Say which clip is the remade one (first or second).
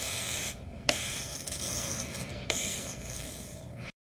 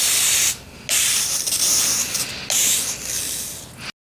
first